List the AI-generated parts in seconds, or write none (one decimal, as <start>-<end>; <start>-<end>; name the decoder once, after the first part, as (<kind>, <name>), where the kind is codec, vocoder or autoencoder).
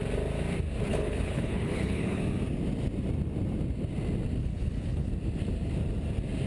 0.9-2.2 (codec, HILCodec); 4.4-5.1